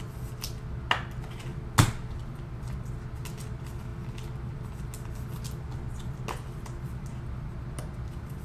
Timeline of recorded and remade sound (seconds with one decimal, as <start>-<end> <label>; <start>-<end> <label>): 0.0-8.4 recorded